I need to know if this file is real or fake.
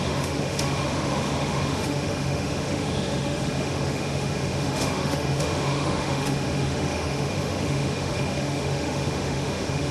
fake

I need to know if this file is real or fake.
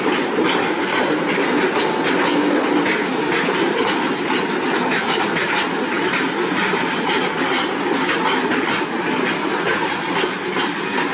real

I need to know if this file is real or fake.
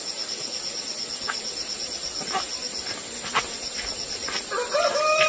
real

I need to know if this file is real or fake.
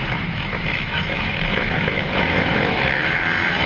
fake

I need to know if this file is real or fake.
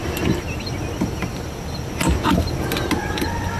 real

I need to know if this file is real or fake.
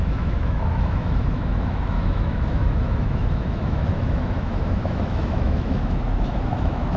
fake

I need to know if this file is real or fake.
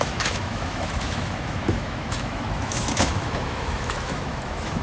fake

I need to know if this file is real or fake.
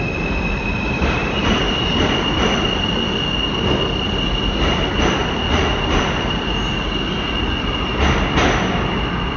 real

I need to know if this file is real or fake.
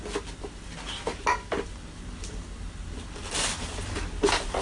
real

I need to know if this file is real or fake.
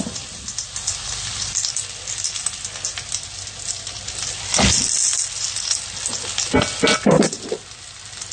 real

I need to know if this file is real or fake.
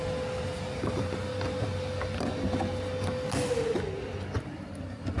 real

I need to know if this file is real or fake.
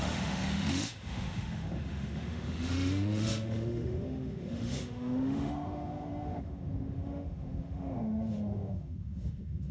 fake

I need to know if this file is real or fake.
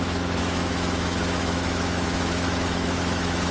fake